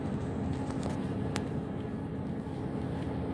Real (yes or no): yes